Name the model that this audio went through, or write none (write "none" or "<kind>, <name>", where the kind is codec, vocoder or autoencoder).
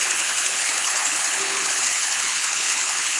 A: codec, HILCodec